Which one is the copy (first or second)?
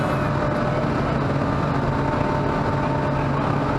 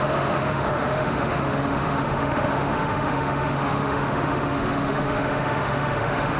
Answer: second